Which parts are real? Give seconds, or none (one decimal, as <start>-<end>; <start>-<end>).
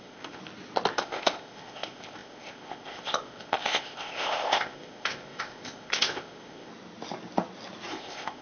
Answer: 0.4-0.9; 6.7-7.9